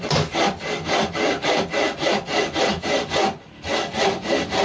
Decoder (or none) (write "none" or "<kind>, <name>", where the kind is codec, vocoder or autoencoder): none